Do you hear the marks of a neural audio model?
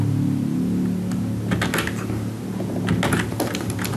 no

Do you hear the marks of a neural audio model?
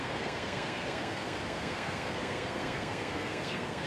yes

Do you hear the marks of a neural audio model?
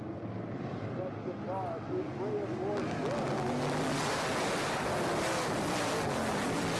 no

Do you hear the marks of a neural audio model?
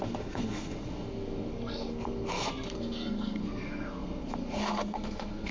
yes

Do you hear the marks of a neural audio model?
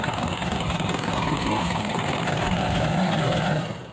yes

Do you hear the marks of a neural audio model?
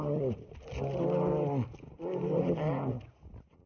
no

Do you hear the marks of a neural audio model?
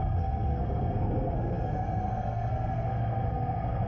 yes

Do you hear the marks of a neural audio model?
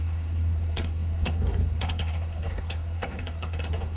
yes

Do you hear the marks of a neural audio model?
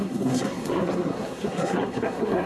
yes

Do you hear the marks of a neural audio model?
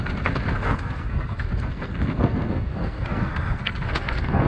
yes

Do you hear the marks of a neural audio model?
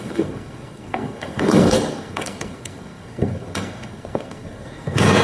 yes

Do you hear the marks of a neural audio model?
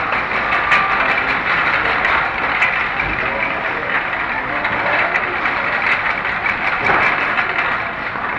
no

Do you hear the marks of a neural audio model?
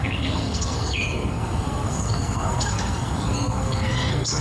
yes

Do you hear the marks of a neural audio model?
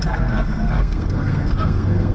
yes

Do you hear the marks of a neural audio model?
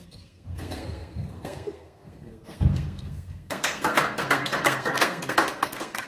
yes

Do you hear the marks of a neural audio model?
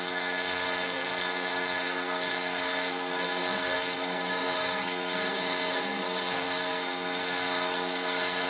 yes